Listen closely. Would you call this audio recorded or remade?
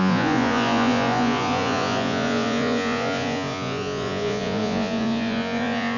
remade